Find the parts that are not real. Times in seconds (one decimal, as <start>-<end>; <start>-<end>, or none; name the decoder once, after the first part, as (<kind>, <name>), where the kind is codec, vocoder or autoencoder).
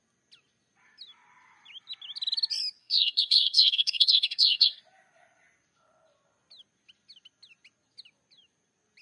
2.8-4.8 (codec, SNAC)